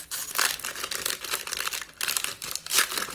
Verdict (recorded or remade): recorded